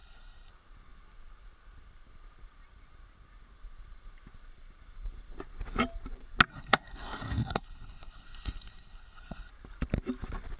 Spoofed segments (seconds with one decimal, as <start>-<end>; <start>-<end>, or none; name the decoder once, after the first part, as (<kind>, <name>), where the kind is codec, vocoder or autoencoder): 0.0-0.5 (codec, SNAC); 6.5-9.5